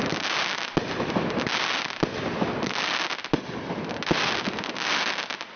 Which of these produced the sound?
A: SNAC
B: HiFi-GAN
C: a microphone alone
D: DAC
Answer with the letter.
C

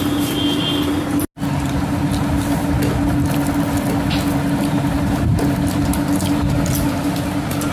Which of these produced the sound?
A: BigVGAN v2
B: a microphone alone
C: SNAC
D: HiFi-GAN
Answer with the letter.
B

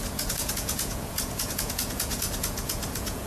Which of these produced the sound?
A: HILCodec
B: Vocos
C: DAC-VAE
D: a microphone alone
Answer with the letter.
B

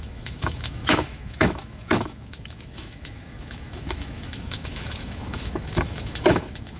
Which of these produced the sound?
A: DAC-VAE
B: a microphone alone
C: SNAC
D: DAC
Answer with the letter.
A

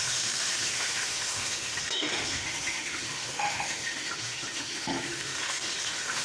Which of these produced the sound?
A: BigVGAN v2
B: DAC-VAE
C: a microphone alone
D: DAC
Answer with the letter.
B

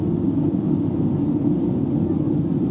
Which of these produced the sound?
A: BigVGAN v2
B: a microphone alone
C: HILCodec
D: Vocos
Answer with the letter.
B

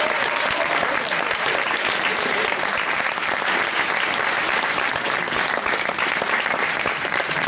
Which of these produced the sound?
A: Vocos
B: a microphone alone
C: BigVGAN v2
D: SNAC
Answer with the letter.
C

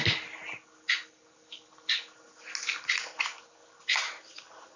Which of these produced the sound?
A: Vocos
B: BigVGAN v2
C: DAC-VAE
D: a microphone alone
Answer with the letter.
D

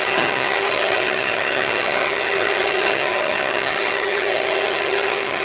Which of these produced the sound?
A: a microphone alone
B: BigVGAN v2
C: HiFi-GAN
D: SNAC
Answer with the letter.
C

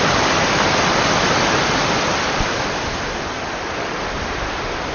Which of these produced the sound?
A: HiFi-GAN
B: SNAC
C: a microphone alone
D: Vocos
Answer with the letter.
C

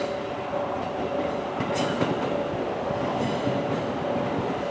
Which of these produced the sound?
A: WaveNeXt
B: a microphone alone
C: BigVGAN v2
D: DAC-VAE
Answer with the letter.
B